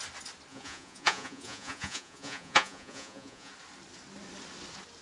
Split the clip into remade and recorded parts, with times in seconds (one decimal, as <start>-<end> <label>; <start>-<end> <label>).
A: 0.0-0.5 recorded; 0.5-3.5 remade; 3.5-5.0 recorded